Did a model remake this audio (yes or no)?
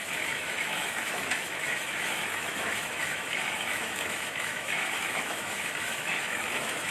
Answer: yes